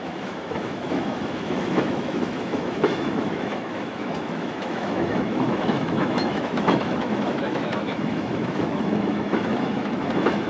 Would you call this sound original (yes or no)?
no